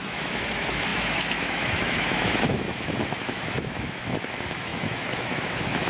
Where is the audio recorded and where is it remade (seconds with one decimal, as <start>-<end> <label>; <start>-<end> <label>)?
0.0-5.9 remade